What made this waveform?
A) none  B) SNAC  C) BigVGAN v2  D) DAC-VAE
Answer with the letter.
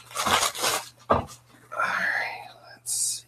A